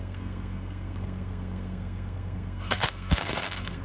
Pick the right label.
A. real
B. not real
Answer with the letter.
B